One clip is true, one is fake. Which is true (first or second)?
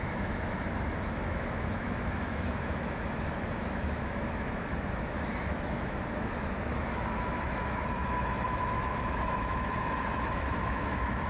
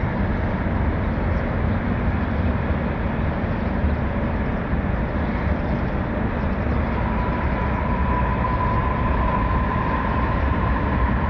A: second